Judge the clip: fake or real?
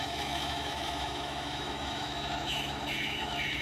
fake